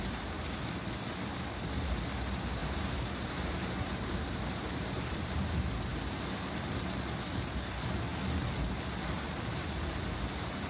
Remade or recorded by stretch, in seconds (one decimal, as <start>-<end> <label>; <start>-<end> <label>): 0.0-2.6 recorded; 2.6-5.5 remade; 5.5-10.7 recorded

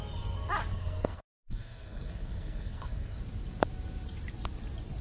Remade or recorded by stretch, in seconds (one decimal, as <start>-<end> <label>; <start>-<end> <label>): 0.0-0.7 recorded; 0.7-3.2 remade; 3.2-5.0 recorded

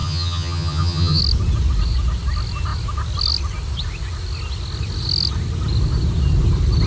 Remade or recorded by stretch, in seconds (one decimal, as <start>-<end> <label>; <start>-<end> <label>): 0.0-1.2 remade; 1.2-6.9 recorded

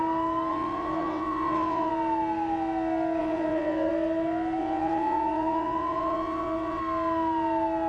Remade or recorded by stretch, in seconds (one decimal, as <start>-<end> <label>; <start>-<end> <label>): 0.0-0.5 recorded; 0.5-1.9 remade; 1.9-3.2 recorded; 3.2-3.9 remade; 3.9-4.6 recorded; 4.6-6.8 remade; 6.8-7.9 recorded

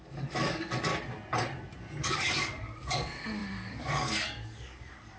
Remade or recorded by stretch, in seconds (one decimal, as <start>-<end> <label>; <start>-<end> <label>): 0.0-0.9 remade; 0.9-2.0 recorded; 2.0-5.2 remade